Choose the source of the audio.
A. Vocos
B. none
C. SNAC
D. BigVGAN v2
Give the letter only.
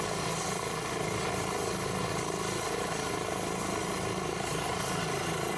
B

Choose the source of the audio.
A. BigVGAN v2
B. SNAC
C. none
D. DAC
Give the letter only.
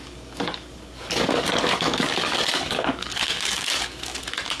D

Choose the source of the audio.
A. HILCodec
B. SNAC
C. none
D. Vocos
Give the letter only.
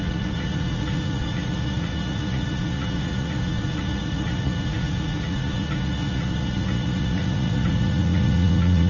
D